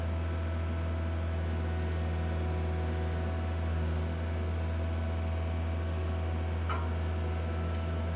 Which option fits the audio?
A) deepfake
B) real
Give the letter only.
B